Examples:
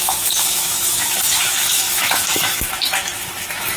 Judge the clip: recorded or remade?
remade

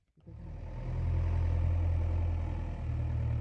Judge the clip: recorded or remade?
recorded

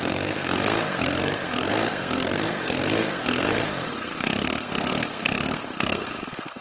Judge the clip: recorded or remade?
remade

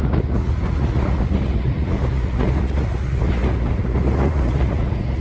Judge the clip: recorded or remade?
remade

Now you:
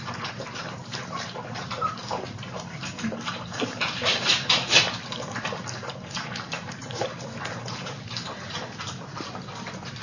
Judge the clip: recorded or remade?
remade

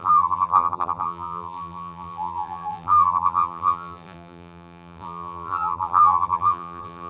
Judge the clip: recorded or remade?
remade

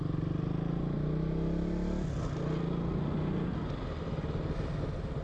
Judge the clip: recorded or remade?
recorded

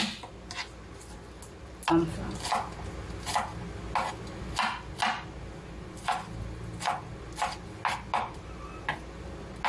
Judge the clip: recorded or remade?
recorded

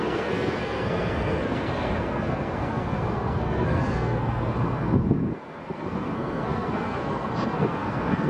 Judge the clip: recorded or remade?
remade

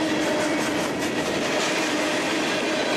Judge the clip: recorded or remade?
recorded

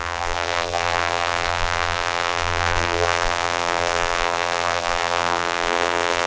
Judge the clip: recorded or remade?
remade